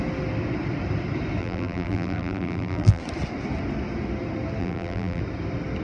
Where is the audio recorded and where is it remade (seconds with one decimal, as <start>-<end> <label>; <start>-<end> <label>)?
0.0-1.4 recorded; 1.4-3.0 remade; 3.0-4.6 recorded; 4.6-5.2 remade; 5.2-5.8 recorded